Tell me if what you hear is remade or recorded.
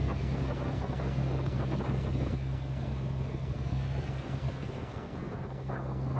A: remade